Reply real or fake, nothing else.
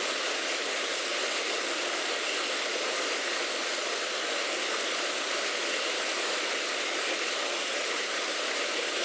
real